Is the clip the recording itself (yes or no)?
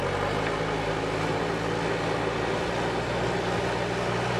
yes